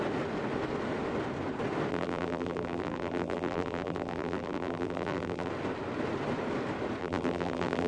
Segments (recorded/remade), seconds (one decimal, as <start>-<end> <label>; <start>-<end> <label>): 0.0-1.9 recorded; 1.9-5.5 remade; 5.5-7.0 recorded; 7.0-7.9 remade